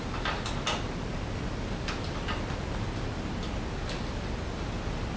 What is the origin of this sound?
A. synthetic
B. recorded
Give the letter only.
B